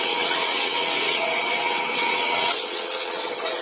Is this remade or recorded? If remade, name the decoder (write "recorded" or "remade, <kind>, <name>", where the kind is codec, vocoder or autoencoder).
remade, vocoder, WaveNeXt